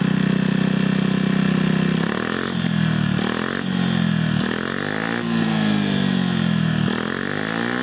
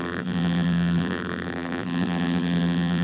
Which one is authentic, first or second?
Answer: first